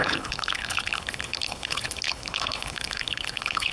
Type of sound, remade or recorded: remade